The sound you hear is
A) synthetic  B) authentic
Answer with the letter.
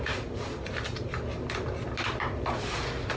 B